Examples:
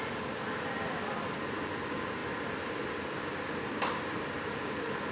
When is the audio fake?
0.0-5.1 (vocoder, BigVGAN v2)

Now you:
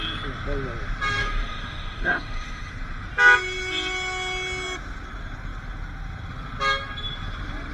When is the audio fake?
1.2-2.7 (autoencoder, DAC-VAE)

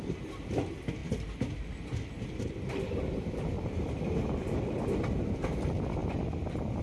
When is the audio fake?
none